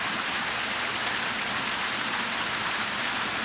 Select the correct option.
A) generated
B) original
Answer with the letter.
B